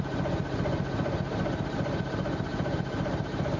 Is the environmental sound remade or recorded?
recorded